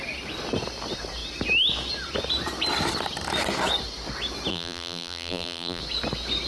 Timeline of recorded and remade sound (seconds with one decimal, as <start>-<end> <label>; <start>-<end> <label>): 0.0-4.5 recorded; 4.5-5.8 remade; 5.8-6.5 recorded